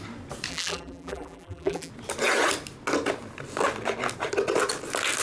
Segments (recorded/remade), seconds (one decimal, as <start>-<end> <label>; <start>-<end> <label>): 0.0-0.5 recorded; 0.5-1.9 remade; 1.9-5.2 recorded